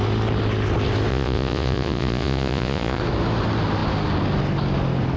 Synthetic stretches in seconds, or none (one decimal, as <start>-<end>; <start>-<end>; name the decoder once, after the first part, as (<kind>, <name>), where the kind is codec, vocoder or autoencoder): 1.1-3.0 (vocoder, Vocos)